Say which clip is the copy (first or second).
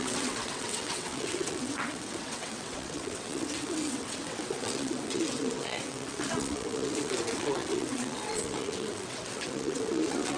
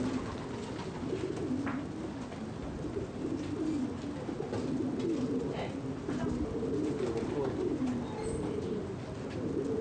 first